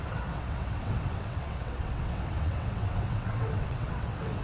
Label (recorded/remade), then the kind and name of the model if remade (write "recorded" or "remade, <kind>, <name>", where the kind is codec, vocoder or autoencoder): remade, vocoder, WaveNeXt